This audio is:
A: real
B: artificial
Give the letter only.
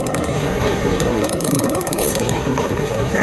B